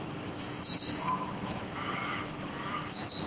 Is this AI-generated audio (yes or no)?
yes